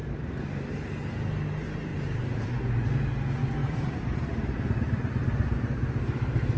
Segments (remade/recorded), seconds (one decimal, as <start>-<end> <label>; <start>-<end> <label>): 0.0-0.7 remade; 0.7-1.9 recorded; 1.9-2.5 remade; 2.5-3.6 recorded; 3.6-6.6 remade